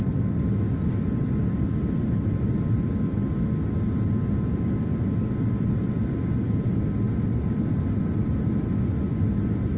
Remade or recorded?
recorded